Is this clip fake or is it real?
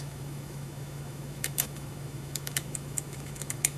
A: fake